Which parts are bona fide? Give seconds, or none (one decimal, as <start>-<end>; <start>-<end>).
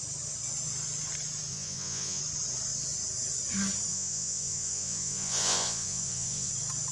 0.0-1.5; 2.2-3.9; 6.5-6.9